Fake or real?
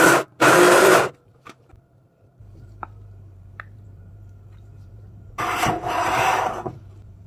fake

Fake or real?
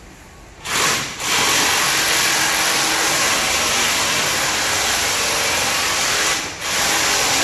real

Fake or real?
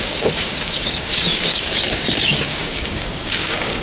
fake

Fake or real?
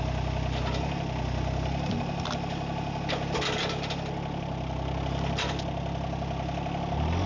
real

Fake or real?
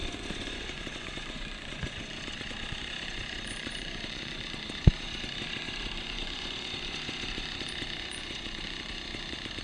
fake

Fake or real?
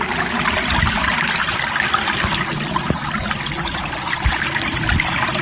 real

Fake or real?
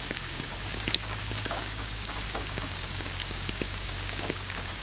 fake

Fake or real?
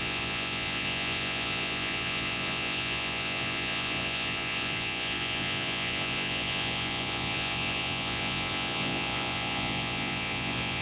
fake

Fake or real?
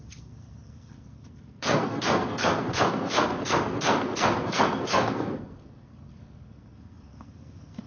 fake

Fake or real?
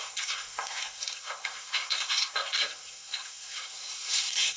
fake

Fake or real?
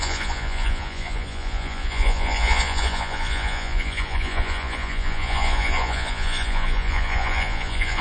fake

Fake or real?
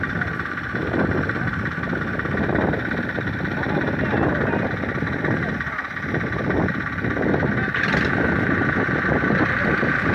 real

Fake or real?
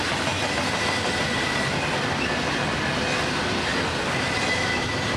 real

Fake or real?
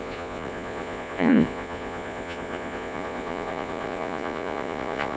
fake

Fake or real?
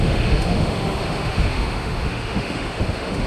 fake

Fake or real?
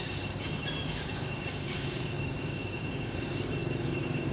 fake